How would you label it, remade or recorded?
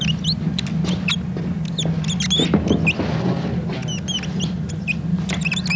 recorded